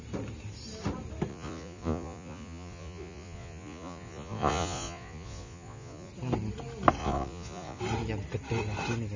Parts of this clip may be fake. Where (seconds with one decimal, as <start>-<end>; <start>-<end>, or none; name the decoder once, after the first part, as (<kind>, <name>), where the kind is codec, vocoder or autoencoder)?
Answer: 1.3-6.1 (vocoder, Vocos); 7.0-7.8